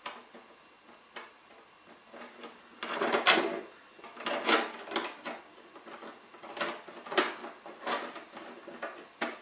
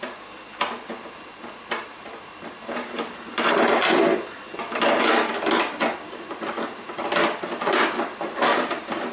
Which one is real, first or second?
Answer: first